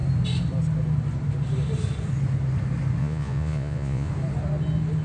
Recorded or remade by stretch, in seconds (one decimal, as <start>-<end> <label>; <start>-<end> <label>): 0.0-3.0 recorded; 3.0-4.1 remade; 4.1-5.0 recorded